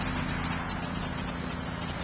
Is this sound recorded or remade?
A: recorded